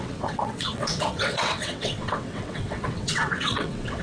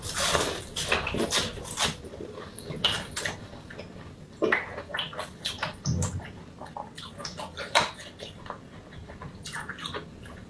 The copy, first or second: first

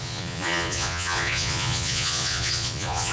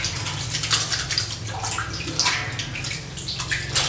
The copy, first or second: first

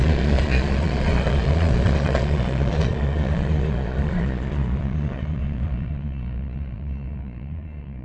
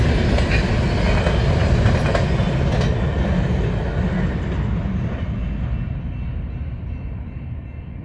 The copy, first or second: first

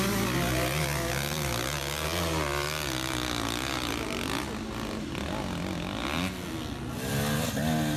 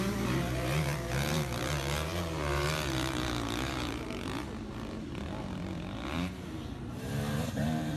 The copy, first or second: second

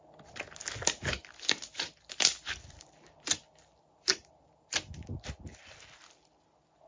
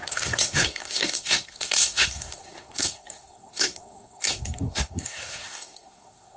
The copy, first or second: second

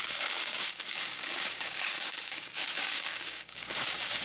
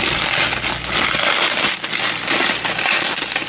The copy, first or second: first